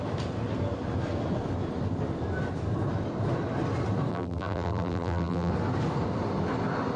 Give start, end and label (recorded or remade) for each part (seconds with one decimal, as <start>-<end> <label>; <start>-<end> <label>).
0.0-4.1 recorded; 4.1-5.5 remade; 5.5-7.0 recorded